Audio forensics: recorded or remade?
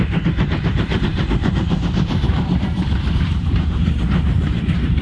remade